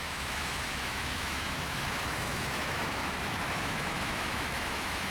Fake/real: fake